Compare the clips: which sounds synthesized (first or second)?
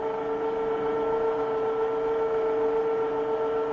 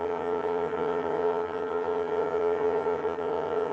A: second